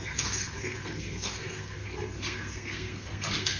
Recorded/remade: remade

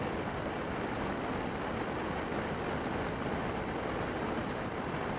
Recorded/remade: recorded